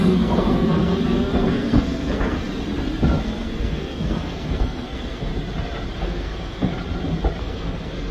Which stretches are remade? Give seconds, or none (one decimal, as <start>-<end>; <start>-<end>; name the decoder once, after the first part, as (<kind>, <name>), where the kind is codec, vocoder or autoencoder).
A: 0.0-2.4 (codec, SNAC); 3.2-5.3; 6.0-6.7; 7.4-8.1